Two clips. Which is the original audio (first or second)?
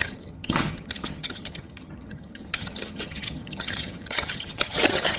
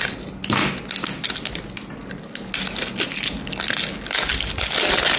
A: second